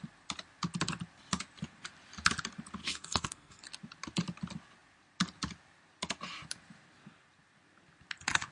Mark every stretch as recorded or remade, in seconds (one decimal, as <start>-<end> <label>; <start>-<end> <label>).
0.0-2.8 recorded; 2.8-3.6 remade; 3.6-8.5 recorded